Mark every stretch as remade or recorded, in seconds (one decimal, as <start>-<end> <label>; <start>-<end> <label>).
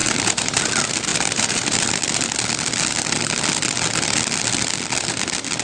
0.0-0.6 remade; 0.6-1.1 recorded; 1.1-2.0 remade; 2.0-5.6 recorded